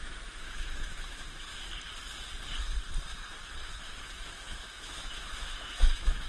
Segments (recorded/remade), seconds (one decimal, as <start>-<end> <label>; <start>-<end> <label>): 0.0-1.5 remade; 1.5-4.0 recorded; 4.0-6.3 remade